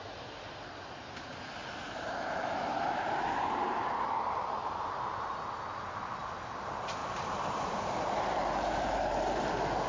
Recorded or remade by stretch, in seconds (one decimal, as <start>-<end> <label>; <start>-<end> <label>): 0.0-1.6 recorded; 1.6-5.6 remade; 5.6-7.0 recorded; 7.0-9.5 remade; 9.5-9.9 recorded